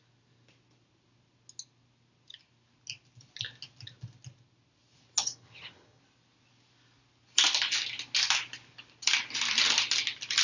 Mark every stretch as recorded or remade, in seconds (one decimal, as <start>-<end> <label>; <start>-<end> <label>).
0.0-5.2 recorded; 5.2-6.0 remade; 6.0-10.4 recorded